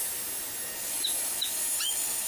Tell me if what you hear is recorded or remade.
recorded